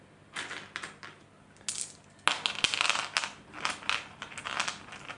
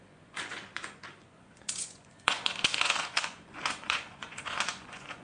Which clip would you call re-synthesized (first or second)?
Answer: second